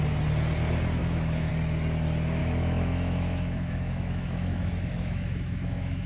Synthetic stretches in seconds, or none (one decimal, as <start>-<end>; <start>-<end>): 1.0-1.5; 2.4-6.1